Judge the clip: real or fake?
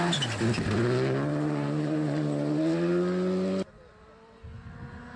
real